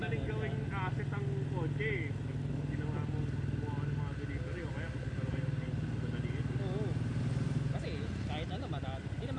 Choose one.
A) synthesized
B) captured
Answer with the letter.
B